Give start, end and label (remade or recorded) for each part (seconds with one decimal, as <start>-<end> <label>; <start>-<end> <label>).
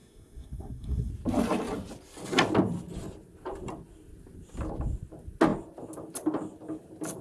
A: 0.0-1.1 remade; 1.1-7.2 recorded